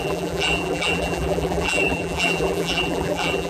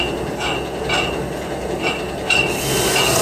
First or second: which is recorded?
second